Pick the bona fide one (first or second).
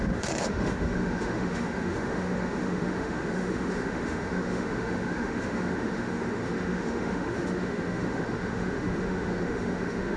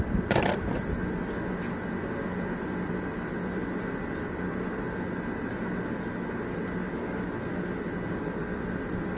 second